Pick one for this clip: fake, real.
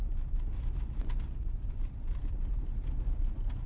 real